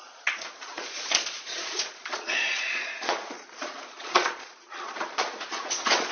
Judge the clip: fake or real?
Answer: fake